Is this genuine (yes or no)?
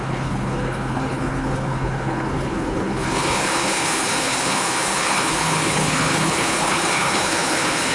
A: no